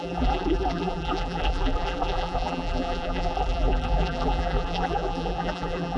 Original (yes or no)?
no